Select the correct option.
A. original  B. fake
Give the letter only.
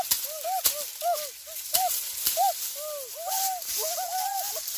A